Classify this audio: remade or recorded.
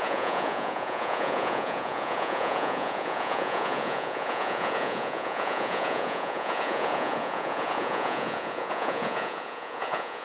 remade